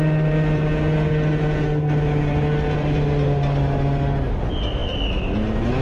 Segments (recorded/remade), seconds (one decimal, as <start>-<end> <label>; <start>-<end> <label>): 0.0-5.8 recorded